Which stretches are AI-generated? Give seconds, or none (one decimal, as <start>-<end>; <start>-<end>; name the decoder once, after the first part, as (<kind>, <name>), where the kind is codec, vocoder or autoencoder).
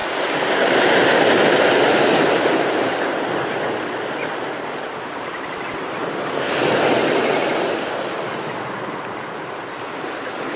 none